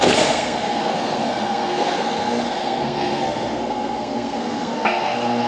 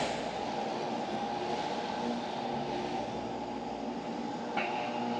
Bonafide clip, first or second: second